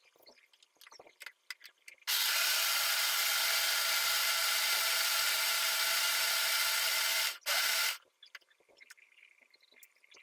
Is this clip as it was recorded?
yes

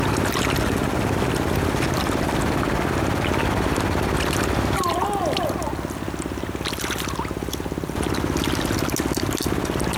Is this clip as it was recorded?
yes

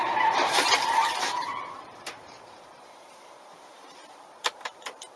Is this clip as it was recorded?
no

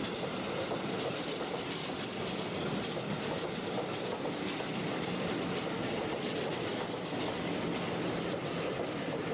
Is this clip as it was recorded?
yes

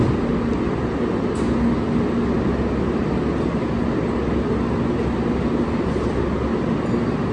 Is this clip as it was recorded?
yes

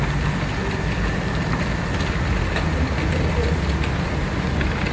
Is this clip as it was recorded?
yes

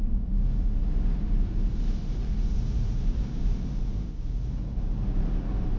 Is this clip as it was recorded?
no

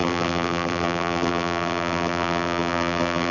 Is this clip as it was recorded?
no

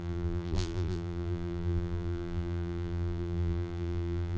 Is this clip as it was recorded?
no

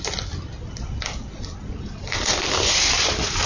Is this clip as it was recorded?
no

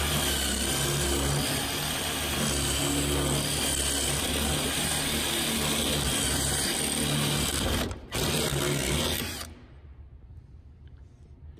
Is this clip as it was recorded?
yes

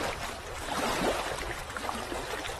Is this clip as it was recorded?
yes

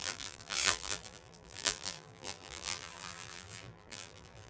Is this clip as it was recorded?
no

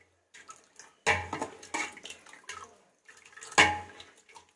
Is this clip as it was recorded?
yes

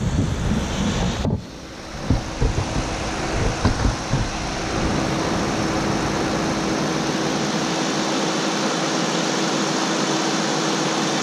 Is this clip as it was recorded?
yes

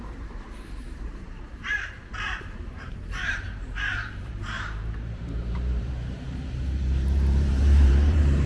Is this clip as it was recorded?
no